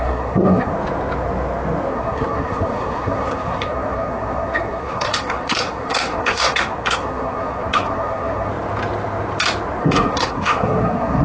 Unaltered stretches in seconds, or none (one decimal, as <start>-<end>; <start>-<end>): 0.7-1.9; 8.5-9.8